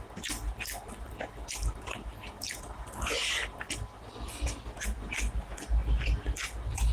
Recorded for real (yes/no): yes